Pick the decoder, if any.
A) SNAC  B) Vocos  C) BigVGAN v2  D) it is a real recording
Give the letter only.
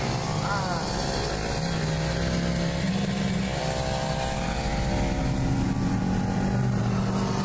D